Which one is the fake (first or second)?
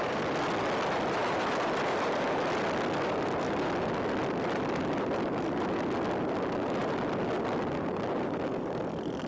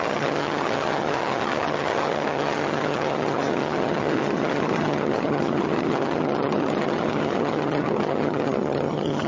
second